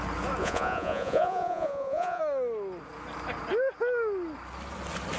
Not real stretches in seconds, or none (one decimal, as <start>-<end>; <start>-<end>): 0.4-2.2